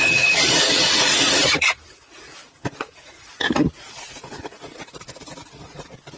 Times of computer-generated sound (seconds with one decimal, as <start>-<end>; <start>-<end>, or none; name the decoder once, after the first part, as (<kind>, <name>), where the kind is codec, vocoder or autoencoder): 0.0-6.2 (vocoder, Vocos)